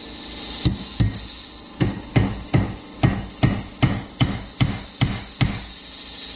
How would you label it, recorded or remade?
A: recorded